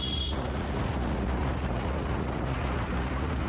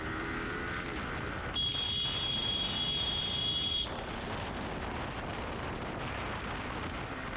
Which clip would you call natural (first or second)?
second